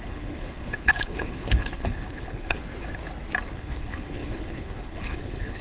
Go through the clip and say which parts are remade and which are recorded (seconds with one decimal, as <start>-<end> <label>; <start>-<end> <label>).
0.0-2.6 remade; 2.6-3.5 recorded; 3.5-5.6 remade